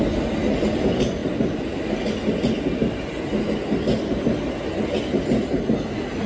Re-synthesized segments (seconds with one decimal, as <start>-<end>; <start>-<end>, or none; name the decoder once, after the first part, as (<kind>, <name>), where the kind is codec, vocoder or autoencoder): none